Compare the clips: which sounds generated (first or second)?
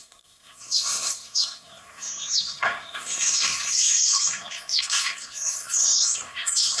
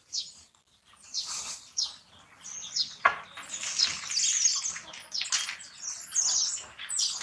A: first